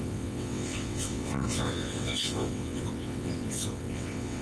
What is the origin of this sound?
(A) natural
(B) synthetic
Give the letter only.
B